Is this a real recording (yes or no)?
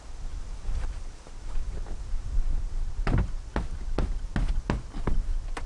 yes